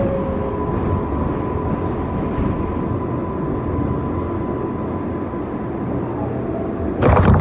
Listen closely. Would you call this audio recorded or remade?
recorded